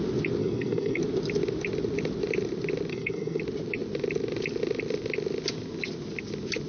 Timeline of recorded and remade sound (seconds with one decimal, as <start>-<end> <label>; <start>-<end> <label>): 0.0-0.4 recorded; 0.4-1.0 remade; 1.0-2.9 recorded; 2.9-3.4 remade; 3.4-6.7 recorded